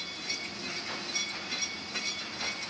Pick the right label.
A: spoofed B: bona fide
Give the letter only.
B